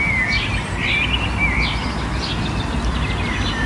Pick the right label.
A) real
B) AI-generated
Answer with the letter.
A